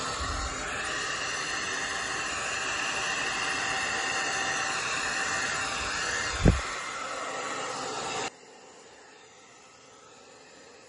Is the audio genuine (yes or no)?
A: yes